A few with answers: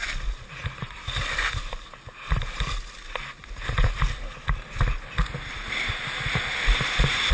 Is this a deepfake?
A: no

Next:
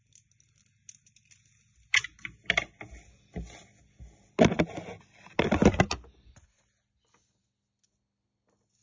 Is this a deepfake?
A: no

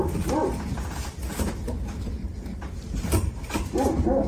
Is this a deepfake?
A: no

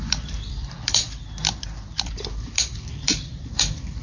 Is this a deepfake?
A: yes